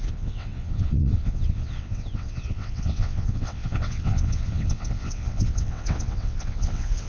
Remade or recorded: remade